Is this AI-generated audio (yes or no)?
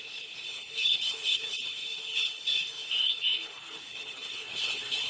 yes